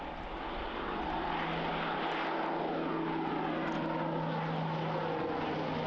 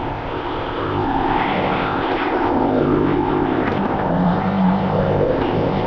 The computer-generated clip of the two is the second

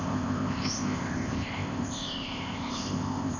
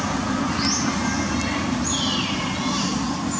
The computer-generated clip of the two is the first